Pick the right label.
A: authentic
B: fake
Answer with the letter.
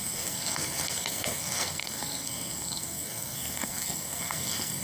B